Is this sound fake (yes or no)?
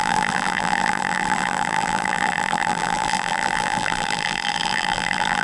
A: yes